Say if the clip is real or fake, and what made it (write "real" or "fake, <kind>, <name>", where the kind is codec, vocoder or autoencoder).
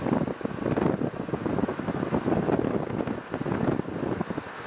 real